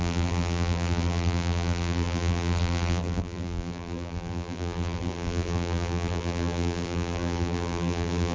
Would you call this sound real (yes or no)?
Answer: no